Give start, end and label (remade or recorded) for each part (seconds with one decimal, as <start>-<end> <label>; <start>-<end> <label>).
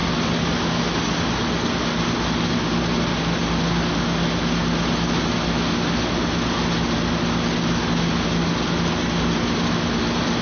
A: 0.0-10.4 recorded